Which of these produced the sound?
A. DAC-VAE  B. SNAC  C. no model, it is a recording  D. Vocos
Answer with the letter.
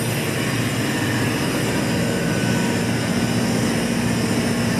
C